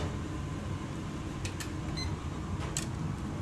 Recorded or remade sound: recorded